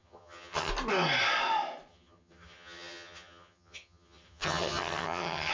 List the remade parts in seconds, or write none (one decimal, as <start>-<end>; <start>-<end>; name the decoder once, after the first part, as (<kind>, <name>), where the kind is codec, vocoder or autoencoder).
0.0-0.7 (vocoder, HiFi-GAN); 1.9-5.5